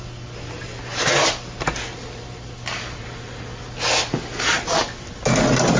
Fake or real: real